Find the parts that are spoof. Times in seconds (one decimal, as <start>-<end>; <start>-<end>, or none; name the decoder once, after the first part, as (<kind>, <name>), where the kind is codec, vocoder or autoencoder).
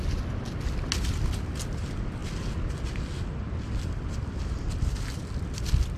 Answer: none